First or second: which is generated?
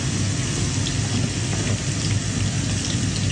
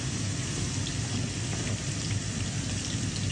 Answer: second